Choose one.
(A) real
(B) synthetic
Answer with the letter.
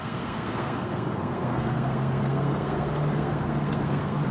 B